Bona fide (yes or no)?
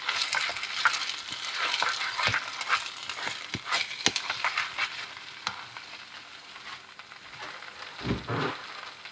yes